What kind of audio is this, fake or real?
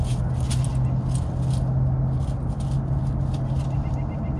real